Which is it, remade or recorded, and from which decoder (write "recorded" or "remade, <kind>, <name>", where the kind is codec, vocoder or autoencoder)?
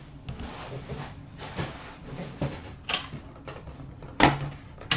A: recorded